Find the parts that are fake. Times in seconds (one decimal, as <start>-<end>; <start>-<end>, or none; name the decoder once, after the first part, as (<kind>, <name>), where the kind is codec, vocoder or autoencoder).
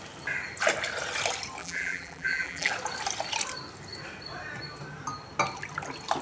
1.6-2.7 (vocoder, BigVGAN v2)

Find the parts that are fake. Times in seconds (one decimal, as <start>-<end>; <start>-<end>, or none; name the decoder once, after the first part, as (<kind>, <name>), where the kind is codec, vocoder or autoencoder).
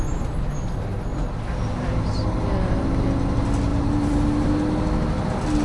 3.7-4.5 (vocoder, BigVGAN v2)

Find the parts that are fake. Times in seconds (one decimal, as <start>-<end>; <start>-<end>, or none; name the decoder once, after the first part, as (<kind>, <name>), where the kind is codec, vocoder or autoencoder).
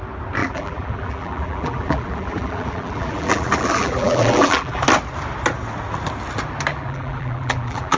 0.4-4.8 (vocoder, BigVGAN v2); 6.7-8.0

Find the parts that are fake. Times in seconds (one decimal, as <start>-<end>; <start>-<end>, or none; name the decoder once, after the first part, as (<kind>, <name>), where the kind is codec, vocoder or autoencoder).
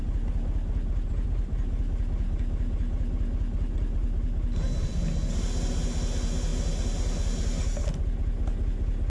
4.0-5.0 (vocoder, BigVGAN v2)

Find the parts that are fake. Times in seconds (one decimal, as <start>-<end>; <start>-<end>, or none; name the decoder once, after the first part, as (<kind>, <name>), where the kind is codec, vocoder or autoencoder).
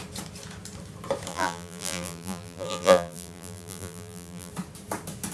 1.3-4.5 (vocoder, BigVGAN v2)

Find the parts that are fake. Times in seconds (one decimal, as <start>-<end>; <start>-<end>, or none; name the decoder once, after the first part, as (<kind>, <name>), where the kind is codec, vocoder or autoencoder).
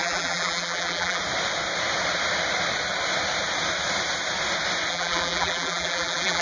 0.0-1.2 (vocoder, BigVGAN v2); 4.9-6.4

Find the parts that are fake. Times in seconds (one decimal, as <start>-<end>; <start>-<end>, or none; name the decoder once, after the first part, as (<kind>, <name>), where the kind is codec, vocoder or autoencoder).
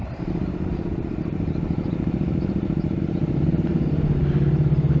0.0-3.0 (vocoder, BigVGAN v2)